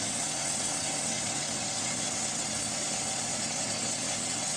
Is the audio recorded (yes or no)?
no